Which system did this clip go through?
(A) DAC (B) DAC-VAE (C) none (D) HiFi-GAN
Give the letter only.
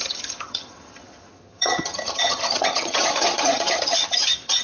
D